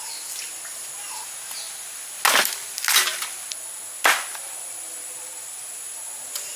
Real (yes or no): yes